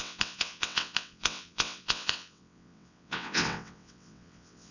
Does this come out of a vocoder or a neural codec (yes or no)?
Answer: yes